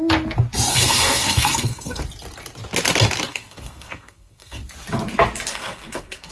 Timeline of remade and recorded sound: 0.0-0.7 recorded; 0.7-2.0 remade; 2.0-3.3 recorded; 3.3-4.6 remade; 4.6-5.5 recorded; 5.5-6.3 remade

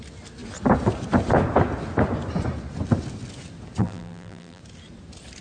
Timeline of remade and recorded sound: 0.0-3.8 recorded; 3.8-4.6 remade; 4.6-5.4 recorded

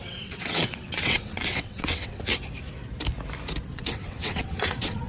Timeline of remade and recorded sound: 0.0-2.2 remade; 2.2-3.7 recorded; 3.7-5.1 remade